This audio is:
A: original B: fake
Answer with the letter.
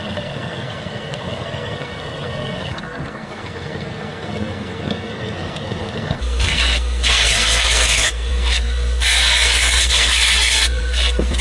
B